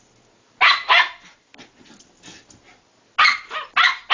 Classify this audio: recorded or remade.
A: recorded